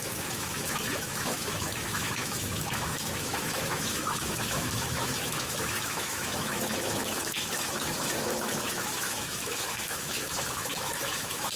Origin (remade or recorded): remade